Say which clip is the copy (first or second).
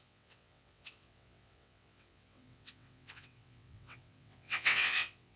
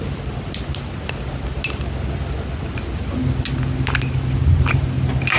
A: first